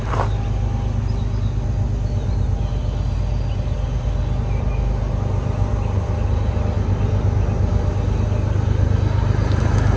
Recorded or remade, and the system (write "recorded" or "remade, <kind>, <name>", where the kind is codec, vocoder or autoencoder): recorded